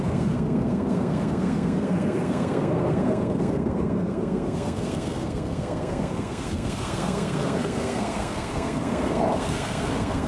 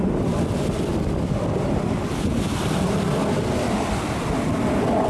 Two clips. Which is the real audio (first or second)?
second